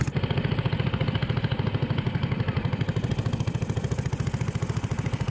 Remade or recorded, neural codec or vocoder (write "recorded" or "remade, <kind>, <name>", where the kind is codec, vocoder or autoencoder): recorded